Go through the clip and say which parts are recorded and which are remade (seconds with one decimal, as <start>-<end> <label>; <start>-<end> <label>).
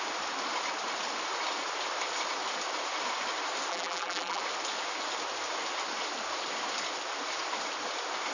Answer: 0.0-3.7 recorded; 3.7-4.4 remade; 4.4-8.3 recorded